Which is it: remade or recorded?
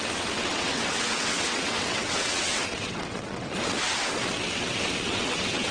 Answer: remade